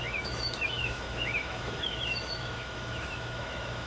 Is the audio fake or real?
fake